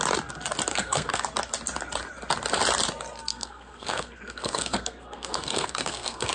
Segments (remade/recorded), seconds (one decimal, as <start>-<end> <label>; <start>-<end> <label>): 0.0-0.7 recorded; 0.7-1.2 remade; 1.2-3.3 recorded; 3.3-6.3 remade